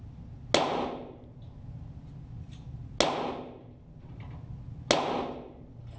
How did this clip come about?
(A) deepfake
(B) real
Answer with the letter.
B